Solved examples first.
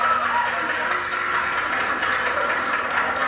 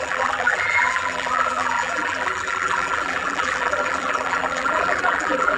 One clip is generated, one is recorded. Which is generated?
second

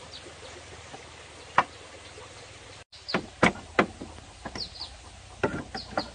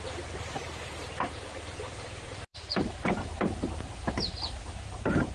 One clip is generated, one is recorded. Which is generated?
second